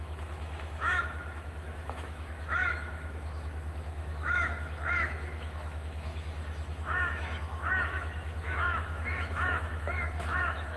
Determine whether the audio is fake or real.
fake